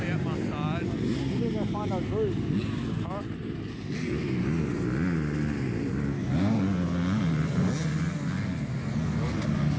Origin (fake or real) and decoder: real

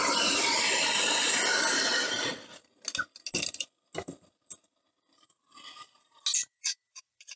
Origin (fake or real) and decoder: real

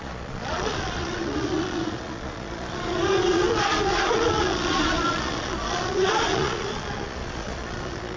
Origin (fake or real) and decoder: fake, vocoder, Vocos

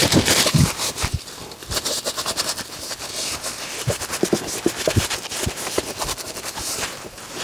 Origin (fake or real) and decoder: fake, vocoder, BigVGAN v2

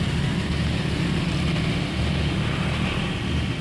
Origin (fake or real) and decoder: real